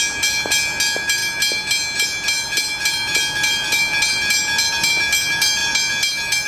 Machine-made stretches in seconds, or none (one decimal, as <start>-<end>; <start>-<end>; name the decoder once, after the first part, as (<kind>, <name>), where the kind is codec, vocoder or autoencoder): none